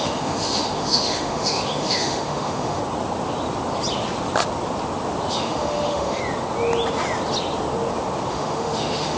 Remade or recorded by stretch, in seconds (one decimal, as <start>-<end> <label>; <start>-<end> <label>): 0.0-2.8 remade; 2.8-5.3 recorded; 5.3-6.2 remade; 6.2-8.3 recorded; 8.3-9.2 remade